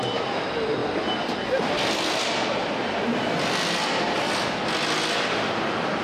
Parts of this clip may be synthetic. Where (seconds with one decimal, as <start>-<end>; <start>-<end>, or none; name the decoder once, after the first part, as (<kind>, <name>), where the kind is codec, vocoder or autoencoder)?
none